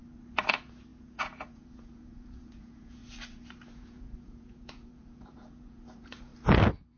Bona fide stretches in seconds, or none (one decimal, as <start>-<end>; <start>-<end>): 0.0-0.5; 3.0-3.7; 6.3-7.0